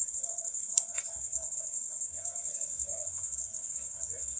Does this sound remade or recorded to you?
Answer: remade